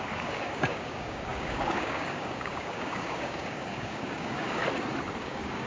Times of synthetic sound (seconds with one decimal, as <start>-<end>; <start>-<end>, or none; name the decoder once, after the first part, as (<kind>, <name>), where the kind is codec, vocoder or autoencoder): 0.0-4.6 (codec, DAC); 5.2-5.7